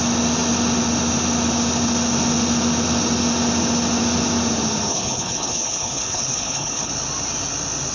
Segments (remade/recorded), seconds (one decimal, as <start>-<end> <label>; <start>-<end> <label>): 0.0-4.9 recorded; 4.9-6.9 remade; 6.9-7.9 recorded